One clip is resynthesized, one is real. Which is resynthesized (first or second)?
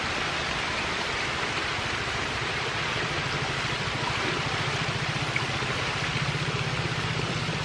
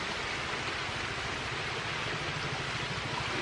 first